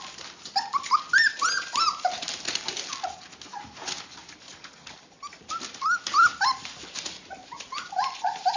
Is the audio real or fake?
real